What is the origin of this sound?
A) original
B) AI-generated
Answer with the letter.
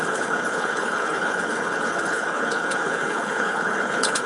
B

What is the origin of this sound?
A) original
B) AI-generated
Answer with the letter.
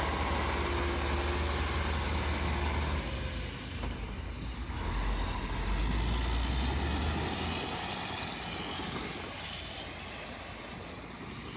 A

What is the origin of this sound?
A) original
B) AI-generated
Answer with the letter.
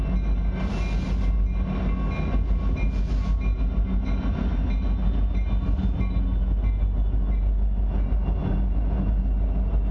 A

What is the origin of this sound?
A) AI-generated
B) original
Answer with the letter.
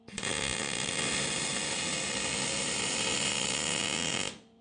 B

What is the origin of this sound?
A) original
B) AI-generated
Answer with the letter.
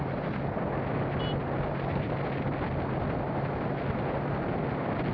A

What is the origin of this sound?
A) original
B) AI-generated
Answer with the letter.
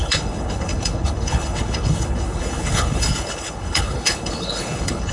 B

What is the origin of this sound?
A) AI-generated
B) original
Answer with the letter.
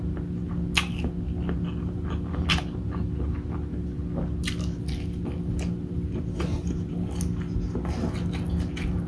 B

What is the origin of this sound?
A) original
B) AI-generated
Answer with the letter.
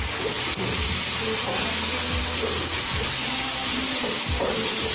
A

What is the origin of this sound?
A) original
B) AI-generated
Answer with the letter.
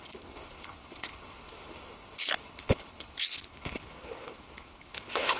B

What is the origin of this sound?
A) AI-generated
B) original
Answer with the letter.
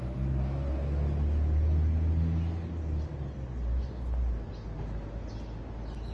B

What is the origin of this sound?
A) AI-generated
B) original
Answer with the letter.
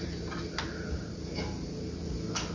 B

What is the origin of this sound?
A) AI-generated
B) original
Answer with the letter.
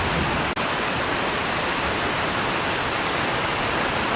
B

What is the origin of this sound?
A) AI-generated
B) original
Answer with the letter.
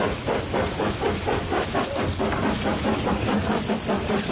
B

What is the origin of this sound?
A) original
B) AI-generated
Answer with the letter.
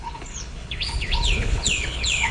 B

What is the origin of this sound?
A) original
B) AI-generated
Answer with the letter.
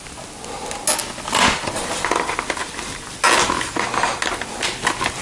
A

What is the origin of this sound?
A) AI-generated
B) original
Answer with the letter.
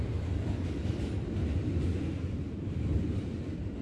B